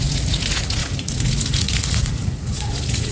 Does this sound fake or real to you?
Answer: fake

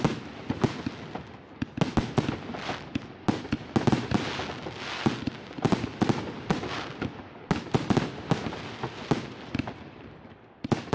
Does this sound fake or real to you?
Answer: real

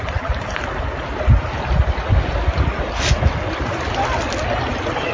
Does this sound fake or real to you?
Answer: real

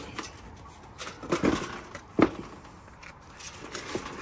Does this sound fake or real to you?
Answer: real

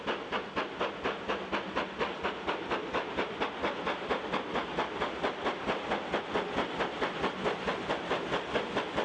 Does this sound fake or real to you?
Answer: real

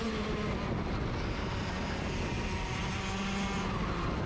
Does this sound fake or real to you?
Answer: real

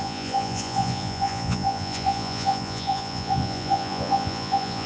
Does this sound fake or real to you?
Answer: fake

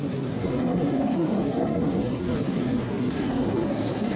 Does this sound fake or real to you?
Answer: fake